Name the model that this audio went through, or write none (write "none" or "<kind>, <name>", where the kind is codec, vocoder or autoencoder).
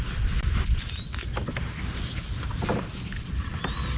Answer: none